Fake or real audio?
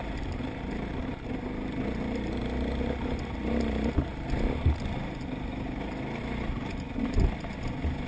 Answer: real